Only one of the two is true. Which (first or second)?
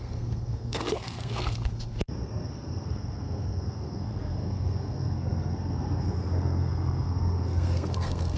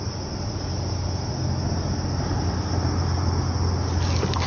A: second